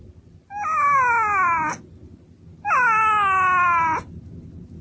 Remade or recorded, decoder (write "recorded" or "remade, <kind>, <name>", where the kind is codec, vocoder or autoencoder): recorded